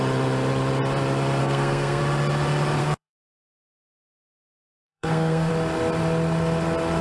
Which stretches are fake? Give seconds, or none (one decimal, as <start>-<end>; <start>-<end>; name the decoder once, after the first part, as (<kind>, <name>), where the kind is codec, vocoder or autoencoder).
1.4-2.0 (codec, SNAC); 2.8-3.4; 4.4-5.5